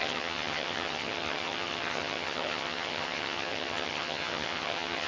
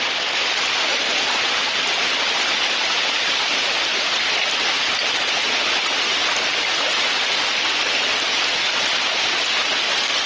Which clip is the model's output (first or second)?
first